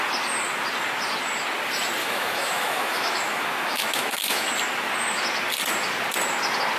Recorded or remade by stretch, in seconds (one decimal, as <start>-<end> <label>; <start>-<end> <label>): 0.0-2.0 recorded; 2.0-4.5 remade; 4.5-6.8 recorded